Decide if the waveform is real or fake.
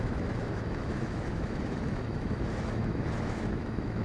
fake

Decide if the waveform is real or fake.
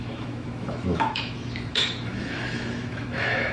fake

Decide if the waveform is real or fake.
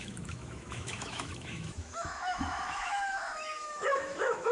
fake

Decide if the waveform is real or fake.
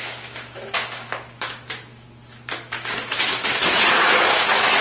fake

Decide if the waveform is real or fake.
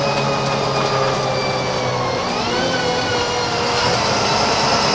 real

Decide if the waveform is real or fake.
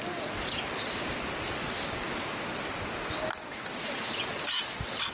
real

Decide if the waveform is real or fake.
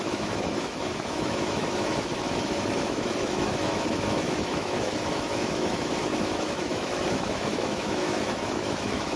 fake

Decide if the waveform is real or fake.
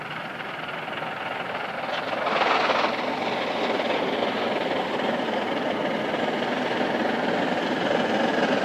real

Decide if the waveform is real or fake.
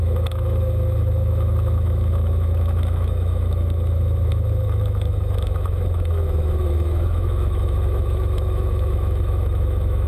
fake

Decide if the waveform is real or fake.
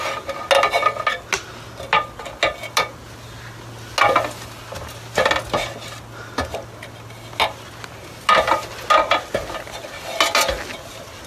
real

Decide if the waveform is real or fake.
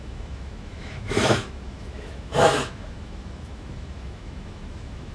fake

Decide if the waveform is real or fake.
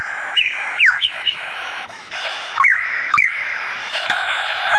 fake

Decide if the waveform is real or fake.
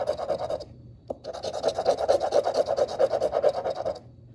real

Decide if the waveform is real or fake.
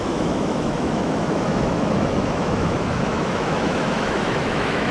fake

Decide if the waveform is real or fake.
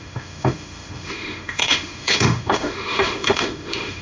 fake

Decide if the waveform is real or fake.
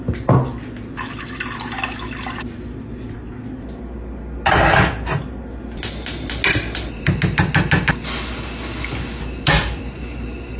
real